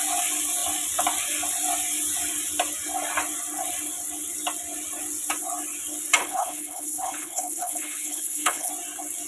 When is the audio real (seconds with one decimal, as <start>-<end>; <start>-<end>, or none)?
0.0-6.2; 8.7-9.3